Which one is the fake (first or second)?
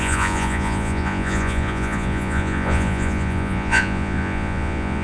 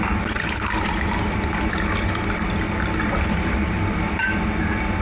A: first